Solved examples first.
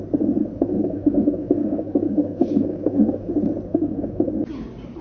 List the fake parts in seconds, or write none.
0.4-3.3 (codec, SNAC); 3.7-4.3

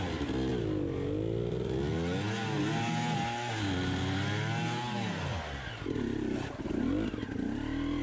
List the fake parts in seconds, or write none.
none